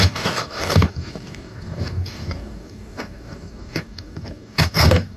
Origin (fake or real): fake